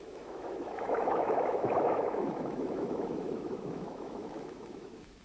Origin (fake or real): fake